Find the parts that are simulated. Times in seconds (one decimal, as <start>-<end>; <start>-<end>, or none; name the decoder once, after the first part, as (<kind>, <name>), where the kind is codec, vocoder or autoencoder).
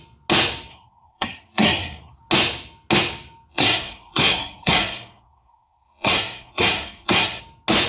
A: 0.7-2.2 (codec, SNAC); 3.5-7.4